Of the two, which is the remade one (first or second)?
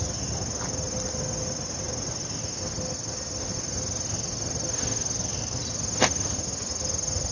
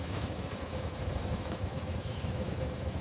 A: second